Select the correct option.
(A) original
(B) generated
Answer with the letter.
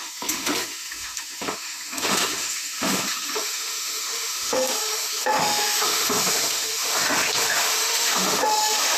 B